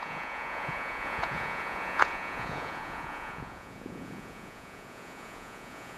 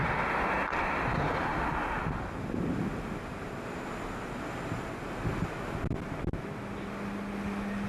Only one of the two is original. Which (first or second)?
second